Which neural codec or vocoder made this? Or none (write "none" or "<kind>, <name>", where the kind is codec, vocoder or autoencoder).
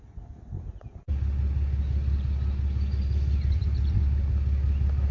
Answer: none